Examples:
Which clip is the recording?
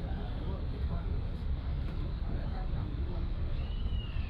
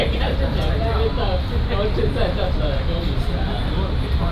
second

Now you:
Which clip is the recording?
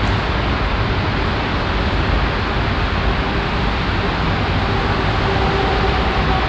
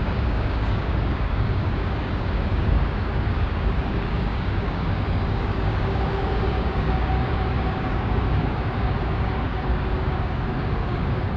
first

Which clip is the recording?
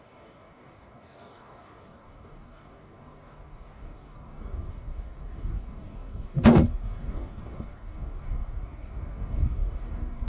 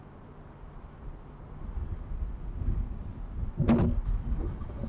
second